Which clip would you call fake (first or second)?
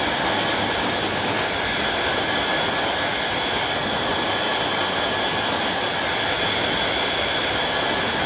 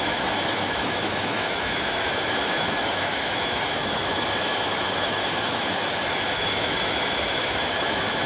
second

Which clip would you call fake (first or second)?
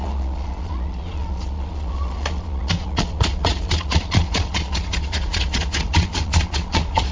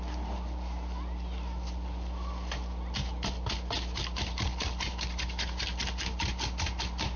first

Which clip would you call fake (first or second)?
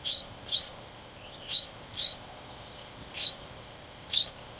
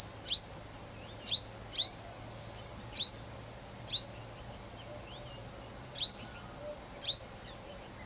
first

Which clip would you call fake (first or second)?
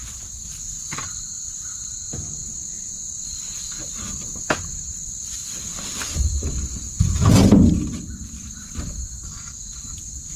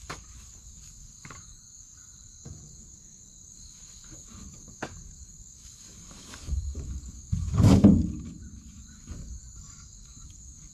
second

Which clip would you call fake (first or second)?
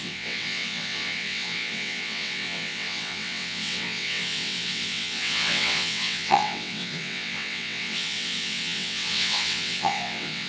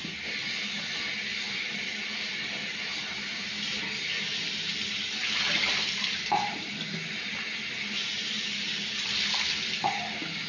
first